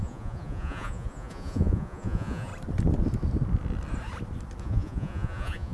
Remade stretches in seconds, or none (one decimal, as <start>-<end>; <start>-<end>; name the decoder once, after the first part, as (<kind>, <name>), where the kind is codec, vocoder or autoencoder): 0.0-2.5 (vocoder, Vocos); 4.6-5.7